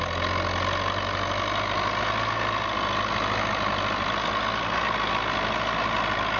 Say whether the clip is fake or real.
real